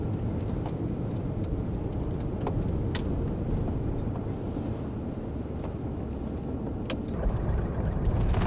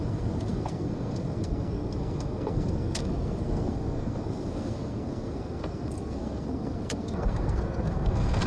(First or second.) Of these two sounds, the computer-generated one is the second